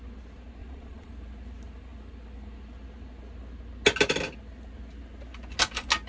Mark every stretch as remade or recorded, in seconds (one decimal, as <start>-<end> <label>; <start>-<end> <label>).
0.0-0.6 recorded; 0.6-1.1 remade; 1.1-6.1 recorded